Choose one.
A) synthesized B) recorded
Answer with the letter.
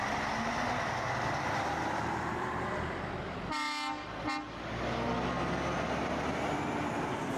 B